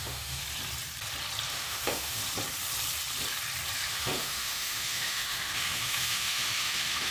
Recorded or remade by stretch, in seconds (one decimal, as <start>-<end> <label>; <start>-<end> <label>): 0.0-0.4 remade; 0.4-1.5 recorded; 1.5-2.2 remade; 2.2-3.9 recorded; 3.9-7.1 remade